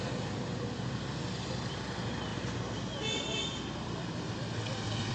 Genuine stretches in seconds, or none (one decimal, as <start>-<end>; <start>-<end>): 0.0-5.1